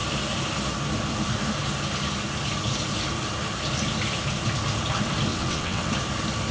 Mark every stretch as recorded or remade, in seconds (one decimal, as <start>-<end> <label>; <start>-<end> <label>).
0.0-5.3 recorded; 5.3-5.9 remade; 5.9-6.5 recorded